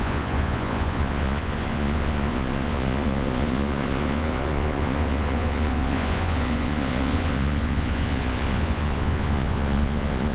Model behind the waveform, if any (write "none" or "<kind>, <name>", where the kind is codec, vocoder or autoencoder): vocoder, Vocos